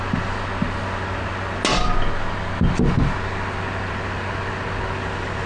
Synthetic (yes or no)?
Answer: no